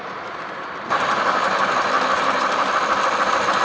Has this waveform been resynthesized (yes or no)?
no